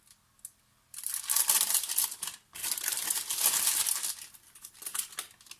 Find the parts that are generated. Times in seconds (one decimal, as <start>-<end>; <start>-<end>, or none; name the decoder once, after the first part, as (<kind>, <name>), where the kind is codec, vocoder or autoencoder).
none